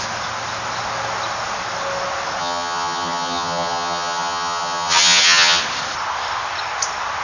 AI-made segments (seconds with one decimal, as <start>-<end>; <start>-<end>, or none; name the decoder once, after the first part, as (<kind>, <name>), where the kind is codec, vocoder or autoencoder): 2.4-5.6 (vocoder, HiFi-GAN)